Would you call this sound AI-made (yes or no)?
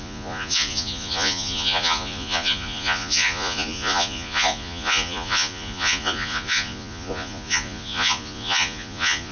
yes